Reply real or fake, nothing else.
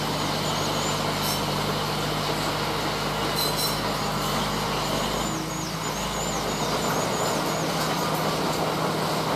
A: real